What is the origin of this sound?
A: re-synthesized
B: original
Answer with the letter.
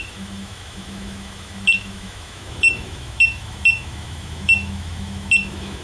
A